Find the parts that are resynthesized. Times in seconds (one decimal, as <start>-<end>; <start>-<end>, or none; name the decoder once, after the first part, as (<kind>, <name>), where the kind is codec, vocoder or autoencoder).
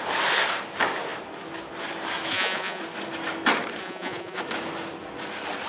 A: 2.3-2.8 (vocoder, Vocos); 3.8-4.4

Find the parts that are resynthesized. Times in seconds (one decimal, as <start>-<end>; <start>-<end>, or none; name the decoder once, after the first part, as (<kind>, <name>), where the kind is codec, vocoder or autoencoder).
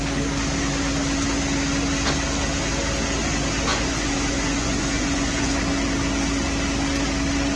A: 3.7-5.5 (vocoder, Vocos)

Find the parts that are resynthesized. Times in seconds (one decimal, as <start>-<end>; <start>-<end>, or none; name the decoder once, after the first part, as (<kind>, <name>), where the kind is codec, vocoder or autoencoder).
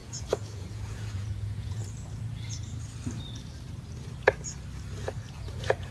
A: 0.0-1.8 (vocoder, Vocos); 5.3-5.9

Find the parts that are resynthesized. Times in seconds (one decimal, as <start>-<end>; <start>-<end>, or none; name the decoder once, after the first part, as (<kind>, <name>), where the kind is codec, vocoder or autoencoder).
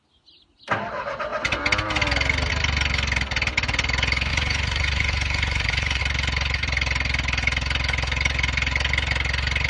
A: 4.3-6.0 (vocoder, Vocos)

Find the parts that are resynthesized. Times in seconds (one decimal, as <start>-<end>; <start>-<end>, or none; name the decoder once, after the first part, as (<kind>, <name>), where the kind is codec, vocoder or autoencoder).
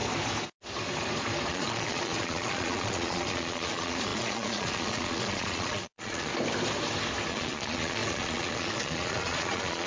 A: 1.5-6.3 (vocoder, Vocos); 7.3-9.9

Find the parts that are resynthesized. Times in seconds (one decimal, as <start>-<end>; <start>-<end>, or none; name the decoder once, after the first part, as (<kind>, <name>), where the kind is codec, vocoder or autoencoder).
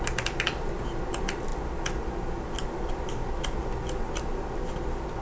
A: none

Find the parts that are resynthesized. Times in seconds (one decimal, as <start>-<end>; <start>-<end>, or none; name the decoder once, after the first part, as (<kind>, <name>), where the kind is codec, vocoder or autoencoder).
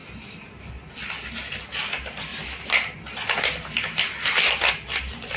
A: none